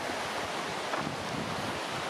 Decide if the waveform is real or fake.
real